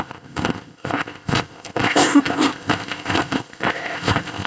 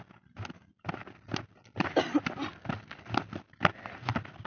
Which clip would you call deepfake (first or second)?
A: first